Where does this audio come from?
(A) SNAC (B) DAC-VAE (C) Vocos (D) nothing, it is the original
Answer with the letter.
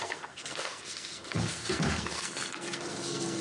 A